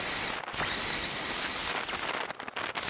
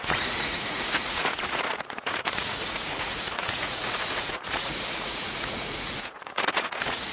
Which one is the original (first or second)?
first